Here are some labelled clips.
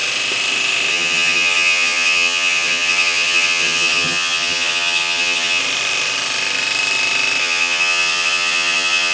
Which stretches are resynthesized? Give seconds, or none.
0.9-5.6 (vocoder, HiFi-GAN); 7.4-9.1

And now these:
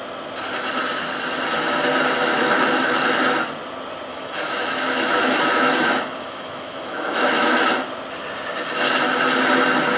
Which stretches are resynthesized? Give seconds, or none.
2.3-3.1 (autoencoder, DAC-VAE); 4.1-7.6

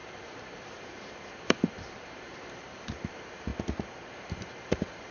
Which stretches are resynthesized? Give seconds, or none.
0.0-3.5 (vocoder, BigVGAN v2); 4.1-5.1